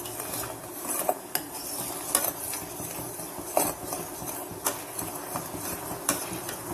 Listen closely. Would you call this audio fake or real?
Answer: real